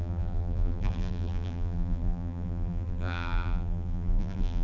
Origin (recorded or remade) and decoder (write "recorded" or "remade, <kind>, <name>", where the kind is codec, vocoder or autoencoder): remade, vocoder, BigVGAN v2